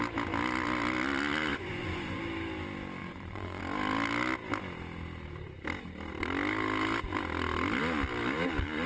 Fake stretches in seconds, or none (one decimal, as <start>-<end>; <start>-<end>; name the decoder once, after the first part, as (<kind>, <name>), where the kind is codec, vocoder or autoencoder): 1.5-2.2 (vocoder, Vocos); 3.0-3.6